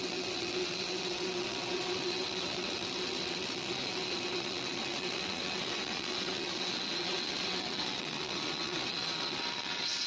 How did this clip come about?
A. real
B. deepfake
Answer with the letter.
B